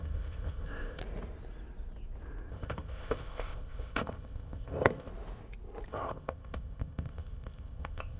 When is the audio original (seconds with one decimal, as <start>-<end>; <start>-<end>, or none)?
1.0-2.5; 5.1-5.9